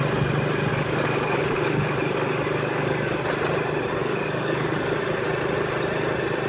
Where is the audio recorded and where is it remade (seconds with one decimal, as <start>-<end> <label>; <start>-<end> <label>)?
0.0-0.7 recorded; 0.7-3.2 remade; 3.2-4.0 recorded; 4.0-5.0 remade; 5.0-6.5 recorded